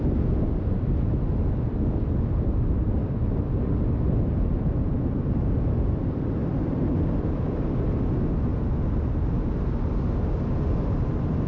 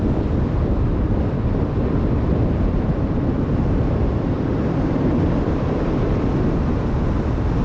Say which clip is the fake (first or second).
second